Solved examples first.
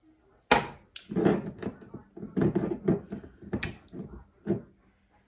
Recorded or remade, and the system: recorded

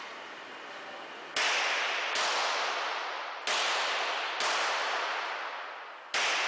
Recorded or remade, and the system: recorded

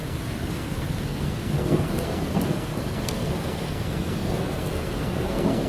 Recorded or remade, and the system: remade, codec, SNAC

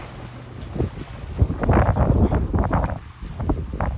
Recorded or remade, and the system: recorded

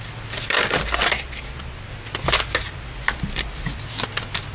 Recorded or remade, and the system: recorded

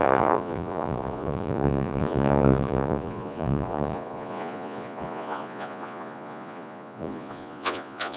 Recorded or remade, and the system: remade, vocoder, Vocos